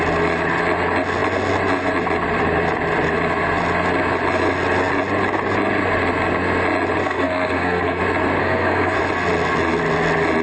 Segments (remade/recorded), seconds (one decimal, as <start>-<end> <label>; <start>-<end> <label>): 0.0-7.0 recorded; 7.0-8.0 remade; 8.0-8.4 recorded; 8.4-9.0 remade; 9.0-10.4 recorded